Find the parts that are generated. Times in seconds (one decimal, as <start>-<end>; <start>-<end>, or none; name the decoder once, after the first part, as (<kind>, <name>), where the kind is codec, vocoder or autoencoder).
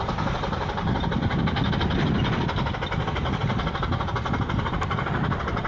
0.0-1.2 (vocoder, BigVGAN v2); 4.6-5.7